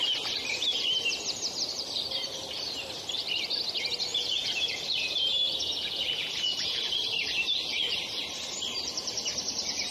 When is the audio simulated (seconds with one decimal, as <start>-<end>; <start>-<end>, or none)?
4.1-6.9